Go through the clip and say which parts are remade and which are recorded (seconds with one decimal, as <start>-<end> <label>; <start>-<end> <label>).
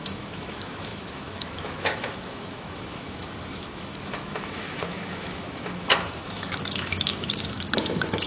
0.0-8.3 remade